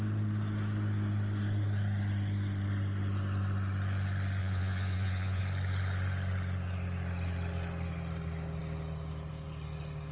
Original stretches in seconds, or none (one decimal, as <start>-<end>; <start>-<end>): 0.0-4.4; 5.4-10.1